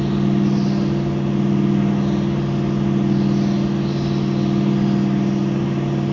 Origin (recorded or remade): recorded